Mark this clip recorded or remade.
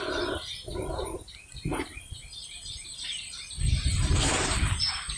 recorded